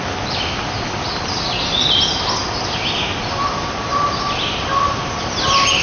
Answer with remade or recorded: recorded